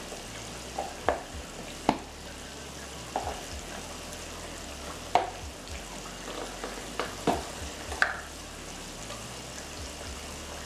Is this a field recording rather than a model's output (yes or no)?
yes